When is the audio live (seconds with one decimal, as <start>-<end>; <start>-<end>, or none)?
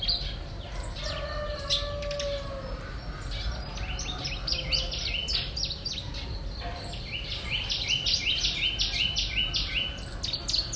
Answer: 0.0-10.8